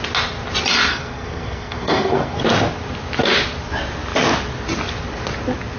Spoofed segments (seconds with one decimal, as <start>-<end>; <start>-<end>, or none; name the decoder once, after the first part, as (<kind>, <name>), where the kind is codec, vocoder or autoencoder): 0.9-2.4 (codec, SNAC)